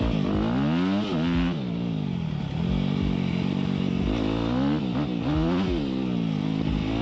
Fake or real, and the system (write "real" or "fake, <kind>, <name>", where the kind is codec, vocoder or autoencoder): real